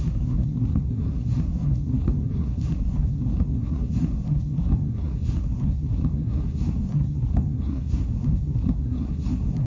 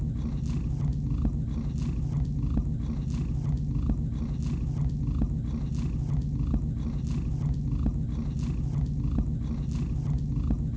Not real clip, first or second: first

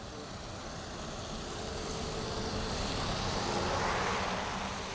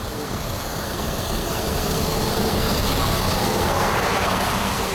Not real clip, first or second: second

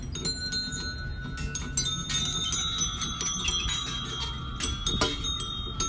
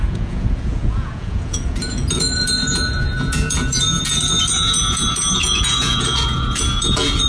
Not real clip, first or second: second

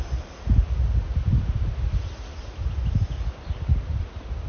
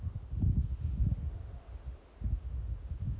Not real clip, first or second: second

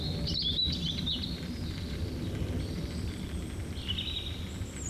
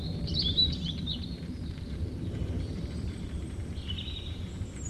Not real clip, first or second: second